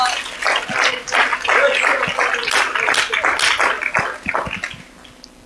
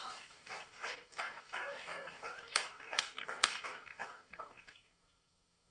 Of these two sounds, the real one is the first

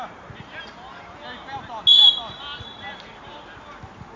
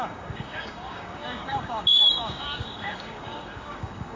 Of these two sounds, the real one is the first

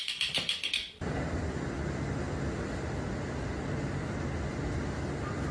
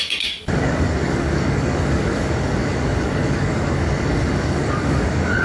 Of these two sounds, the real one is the first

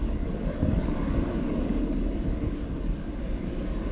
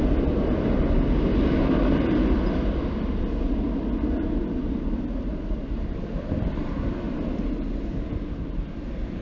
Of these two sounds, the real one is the second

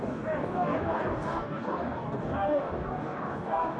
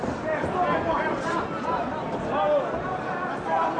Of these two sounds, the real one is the second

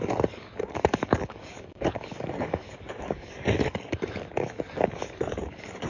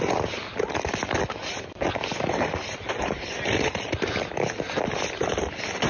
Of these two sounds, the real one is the second